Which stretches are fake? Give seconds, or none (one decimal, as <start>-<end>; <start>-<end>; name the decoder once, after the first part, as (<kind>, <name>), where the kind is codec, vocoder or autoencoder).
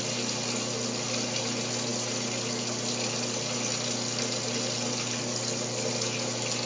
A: none